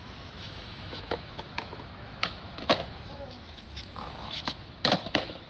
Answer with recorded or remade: remade